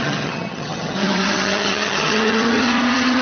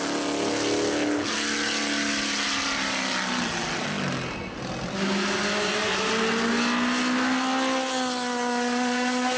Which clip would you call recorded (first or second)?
second